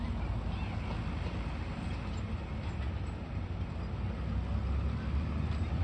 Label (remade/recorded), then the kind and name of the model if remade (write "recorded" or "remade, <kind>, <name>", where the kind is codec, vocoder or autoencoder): recorded